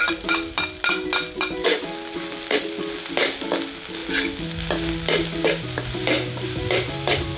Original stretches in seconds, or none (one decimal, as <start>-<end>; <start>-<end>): 0.0-7.4